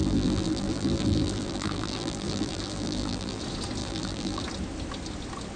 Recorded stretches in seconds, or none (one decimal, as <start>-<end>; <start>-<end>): 3.4-3.8; 4.4-5.6